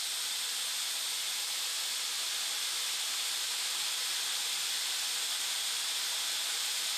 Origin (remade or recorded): recorded